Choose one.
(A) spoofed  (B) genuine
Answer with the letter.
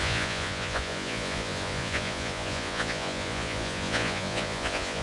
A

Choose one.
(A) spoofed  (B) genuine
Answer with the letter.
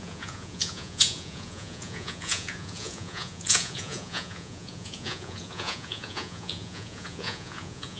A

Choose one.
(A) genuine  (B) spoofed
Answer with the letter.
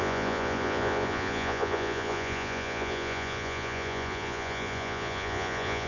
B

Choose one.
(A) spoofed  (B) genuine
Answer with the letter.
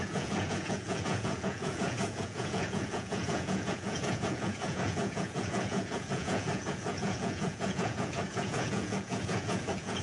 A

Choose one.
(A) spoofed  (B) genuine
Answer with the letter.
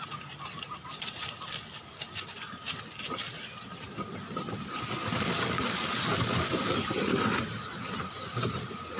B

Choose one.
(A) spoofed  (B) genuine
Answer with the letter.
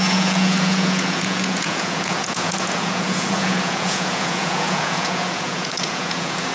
A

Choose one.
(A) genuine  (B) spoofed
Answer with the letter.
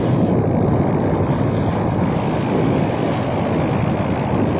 A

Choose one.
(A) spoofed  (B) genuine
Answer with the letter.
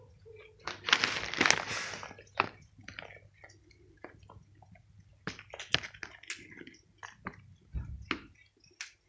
B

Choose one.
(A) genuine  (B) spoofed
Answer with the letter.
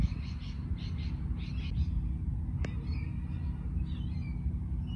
A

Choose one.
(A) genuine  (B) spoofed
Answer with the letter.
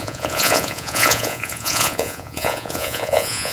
B